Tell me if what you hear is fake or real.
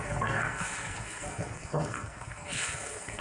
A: fake